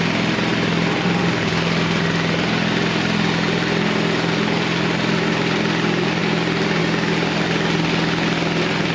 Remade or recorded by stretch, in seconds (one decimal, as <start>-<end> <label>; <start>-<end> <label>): 0.0-8.9 recorded